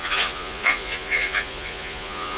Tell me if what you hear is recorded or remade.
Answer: remade